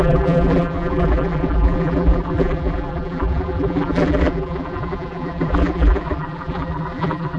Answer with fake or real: fake